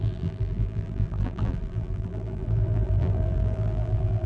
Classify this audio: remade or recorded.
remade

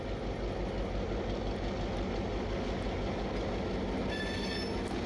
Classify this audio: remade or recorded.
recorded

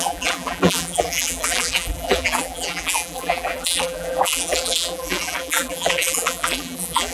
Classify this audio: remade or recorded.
remade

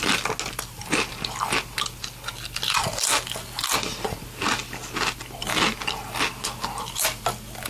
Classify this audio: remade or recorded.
recorded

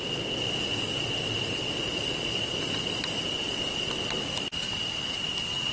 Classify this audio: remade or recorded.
remade